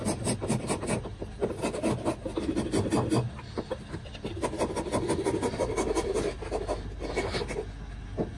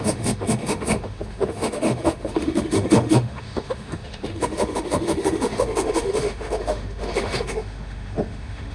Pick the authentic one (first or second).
first